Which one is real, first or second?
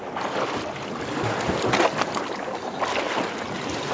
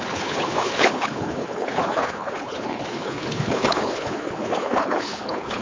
first